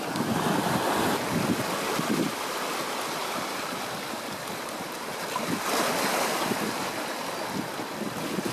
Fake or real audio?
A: real